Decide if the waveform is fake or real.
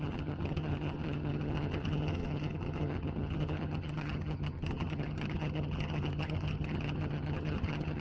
fake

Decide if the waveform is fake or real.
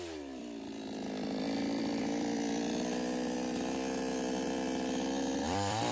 fake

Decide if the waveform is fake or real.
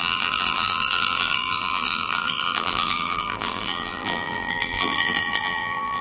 fake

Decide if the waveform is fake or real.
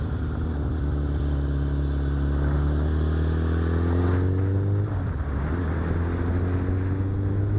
real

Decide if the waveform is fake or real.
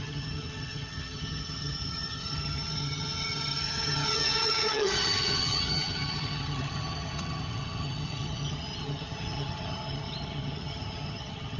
fake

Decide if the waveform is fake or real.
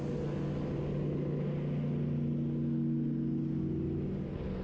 real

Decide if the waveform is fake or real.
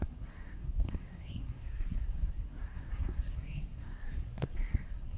fake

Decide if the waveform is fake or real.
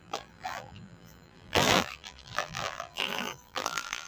fake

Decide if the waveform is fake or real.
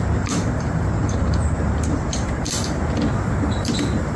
fake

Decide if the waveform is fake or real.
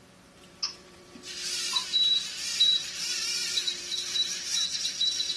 fake